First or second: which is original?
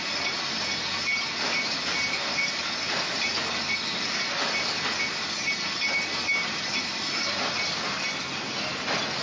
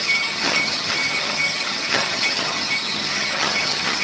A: first